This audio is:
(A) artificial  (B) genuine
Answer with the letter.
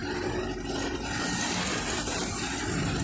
B